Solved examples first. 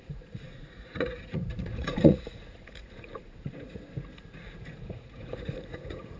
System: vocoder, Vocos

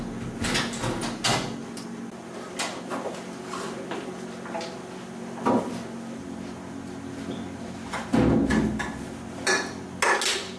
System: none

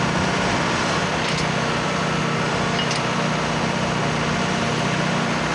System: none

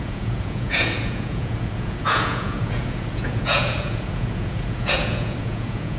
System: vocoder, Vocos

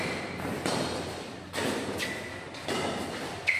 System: none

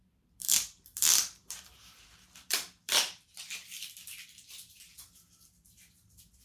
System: vocoder, BigVGAN v2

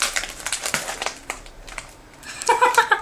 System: vocoder, BigVGAN v2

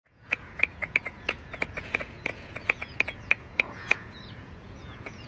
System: vocoder, Vocos